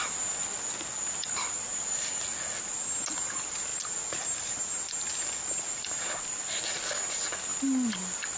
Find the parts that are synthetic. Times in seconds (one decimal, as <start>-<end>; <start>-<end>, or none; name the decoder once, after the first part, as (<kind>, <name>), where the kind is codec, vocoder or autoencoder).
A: none